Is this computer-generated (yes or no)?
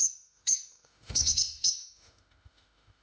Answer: yes